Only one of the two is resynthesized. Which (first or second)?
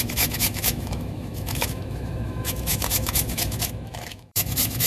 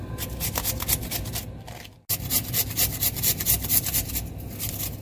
first